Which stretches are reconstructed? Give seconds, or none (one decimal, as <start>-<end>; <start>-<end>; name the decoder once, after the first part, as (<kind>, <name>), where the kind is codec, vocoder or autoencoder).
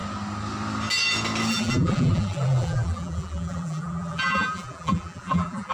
1.5-5.7 (vocoder, BigVGAN v2)